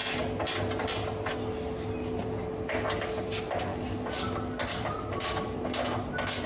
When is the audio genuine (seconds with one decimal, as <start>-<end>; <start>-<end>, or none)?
0.0-6.5

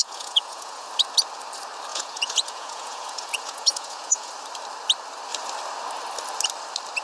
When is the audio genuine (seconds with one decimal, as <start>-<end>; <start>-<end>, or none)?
0.9-1.9; 4.3-7.0

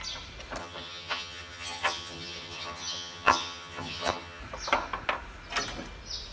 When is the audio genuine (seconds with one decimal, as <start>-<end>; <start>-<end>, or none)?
0.0-0.6; 4.4-6.3

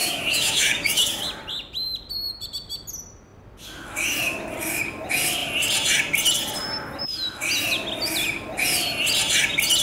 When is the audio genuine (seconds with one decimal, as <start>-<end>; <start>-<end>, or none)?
1.2-9.8

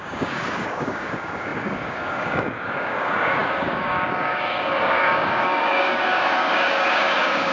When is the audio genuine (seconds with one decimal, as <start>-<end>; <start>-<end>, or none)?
none